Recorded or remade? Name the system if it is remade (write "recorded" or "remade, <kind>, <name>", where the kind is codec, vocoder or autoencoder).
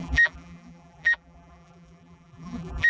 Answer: remade, vocoder, BigVGAN v2